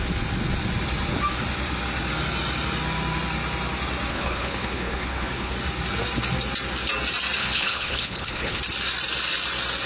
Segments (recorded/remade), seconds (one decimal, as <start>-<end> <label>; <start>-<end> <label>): 0.0-4.1 recorded; 4.1-5.5 remade; 5.5-7.4 recorded; 7.4-8.6 remade; 8.6-9.9 recorded